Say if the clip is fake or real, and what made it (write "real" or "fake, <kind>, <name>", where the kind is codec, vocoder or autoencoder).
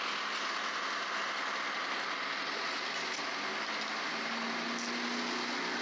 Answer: real